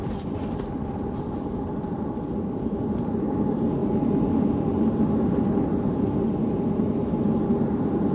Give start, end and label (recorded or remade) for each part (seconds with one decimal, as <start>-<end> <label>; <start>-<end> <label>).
0.0-8.1 recorded